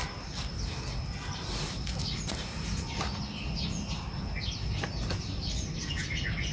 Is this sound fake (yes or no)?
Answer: no